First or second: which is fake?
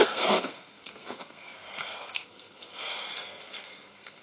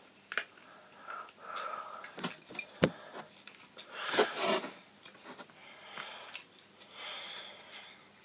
first